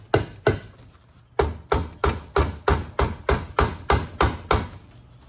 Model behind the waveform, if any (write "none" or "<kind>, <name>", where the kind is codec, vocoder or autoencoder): none